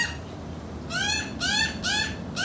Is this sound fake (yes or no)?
no